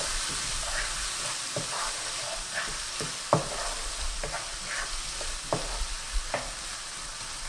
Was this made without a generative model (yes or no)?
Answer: yes